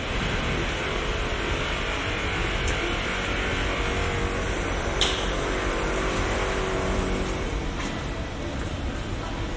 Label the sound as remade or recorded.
recorded